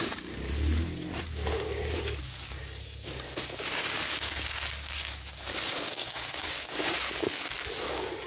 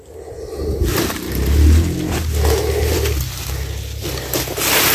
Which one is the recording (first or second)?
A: second